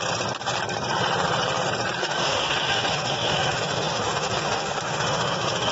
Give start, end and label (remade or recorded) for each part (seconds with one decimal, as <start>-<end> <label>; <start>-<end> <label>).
0.0-2.0 recorded; 2.0-5.7 remade

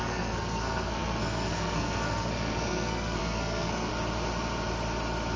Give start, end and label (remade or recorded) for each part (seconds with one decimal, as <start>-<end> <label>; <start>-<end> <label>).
0.0-3.9 remade; 3.9-5.4 recorded

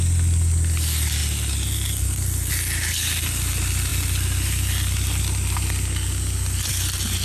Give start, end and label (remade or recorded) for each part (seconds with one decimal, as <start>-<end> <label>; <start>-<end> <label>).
0.0-7.2 recorded

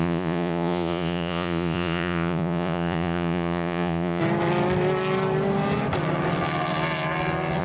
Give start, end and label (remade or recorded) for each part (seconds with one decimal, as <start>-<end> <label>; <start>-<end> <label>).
0.0-4.2 remade; 4.2-7.6 recorded

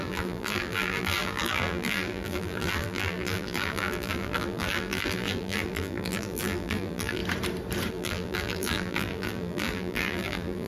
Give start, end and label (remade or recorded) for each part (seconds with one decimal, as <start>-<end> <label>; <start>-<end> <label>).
0.0-7.2 remade; 7.2-7.9 recorded; 7.9-10.7 remade

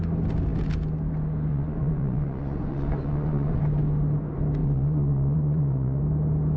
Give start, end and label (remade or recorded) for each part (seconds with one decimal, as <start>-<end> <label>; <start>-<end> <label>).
0.0-1.5 recorded; 1.5-3.6 remade; 3.6-4.6 recorded; 4.6-6.0 remade; 6.0-6.6 recorded